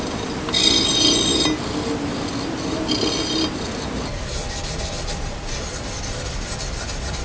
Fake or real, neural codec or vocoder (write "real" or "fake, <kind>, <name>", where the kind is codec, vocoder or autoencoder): real